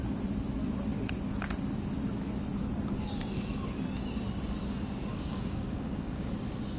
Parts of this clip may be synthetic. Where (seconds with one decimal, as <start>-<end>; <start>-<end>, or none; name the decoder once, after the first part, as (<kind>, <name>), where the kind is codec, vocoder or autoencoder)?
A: 5.1-6.3 (codec, DAC)